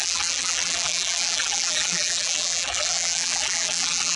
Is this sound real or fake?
fake